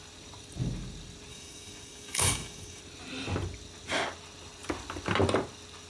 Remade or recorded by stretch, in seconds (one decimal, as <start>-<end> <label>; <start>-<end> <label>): 0.0-1.3 recorded; 1.3-2.8 remade; 2.8-5.9 recorded